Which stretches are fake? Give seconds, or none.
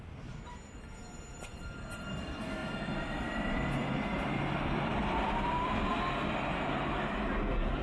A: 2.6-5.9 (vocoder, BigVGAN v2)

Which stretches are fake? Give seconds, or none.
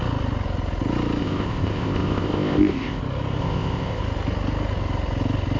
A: 1.2-3.0 (codec, ZipCodec); 3.4-4.0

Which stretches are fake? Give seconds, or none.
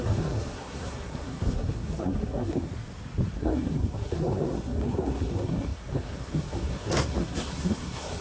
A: 0.0-2.7 (codec, SNAC); 3.4-8.2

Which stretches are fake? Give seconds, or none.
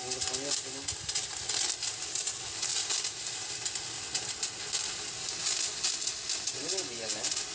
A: none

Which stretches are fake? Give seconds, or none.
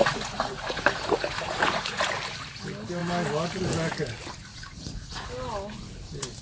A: 0.0-2.1 (vocoder, Vocos); 4.5-5.3